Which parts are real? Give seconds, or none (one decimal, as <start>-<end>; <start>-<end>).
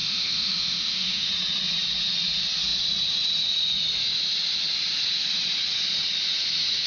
1.3-6.9